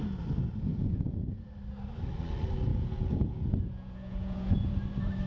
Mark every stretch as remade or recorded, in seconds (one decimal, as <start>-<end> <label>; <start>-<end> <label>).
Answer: 0.0-0.7 recorded; 0.7-1.5 remade; 1.5-2.7 recorded; 2.7-4.7 remade; 4.7-5.3 recorded